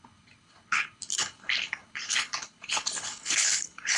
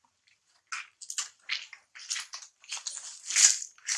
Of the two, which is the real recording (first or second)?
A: second